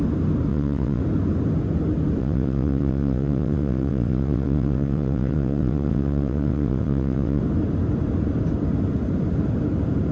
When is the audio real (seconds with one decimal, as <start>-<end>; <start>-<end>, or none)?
0.0-0.5; 1.0-2.2; 7.4-10.1